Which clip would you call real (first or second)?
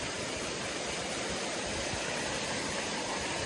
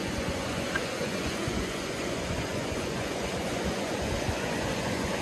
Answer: first